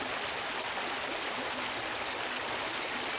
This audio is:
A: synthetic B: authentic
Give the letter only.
B